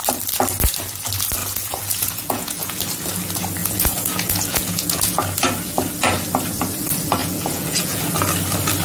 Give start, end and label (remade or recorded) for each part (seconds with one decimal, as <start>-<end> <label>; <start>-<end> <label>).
0.0-1.4 recorded; 1.4-2.8 remade; 2.8-3.6 recorded; 3.6-5.2 remade; 5.2-7.2 recorded; 7.2-8.0 remade; 8.0-8.8 recorded